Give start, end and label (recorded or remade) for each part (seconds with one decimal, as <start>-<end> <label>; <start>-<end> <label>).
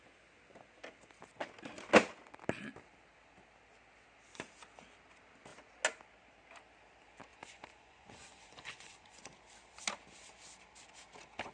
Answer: 0.0-7.3 recorded; 7.3-9.2 remade; 9.2-11.5 recorded